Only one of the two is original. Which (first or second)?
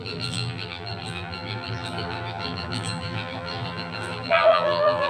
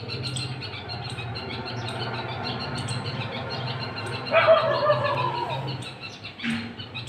second